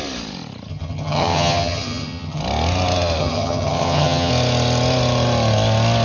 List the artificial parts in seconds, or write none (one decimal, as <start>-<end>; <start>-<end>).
0.7-2.4; 3.2-4.3